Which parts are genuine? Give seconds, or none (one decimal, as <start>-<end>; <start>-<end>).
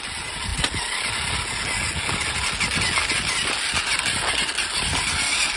0.0-5.6